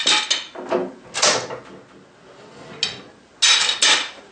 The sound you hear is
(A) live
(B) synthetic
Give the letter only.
A